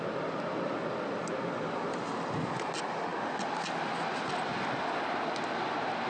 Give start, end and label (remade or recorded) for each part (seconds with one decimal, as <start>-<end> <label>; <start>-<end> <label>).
0.0-4.5 recorded; 4.5-5.1 remade; 5.1-6.1 recorded